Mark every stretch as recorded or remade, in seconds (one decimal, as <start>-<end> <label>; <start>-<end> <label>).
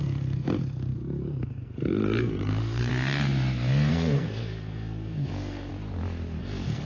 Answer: 0.0-2.9 remade; 2.9-3.9 recorded; 3.9-5.7 remade; 5.7-6.4 recorded; 6.4-6.9 remade